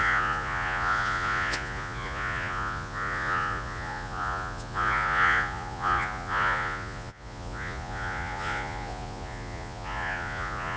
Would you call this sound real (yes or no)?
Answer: no